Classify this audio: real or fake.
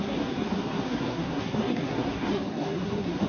fake